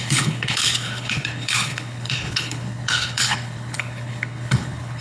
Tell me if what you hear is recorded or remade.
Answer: remade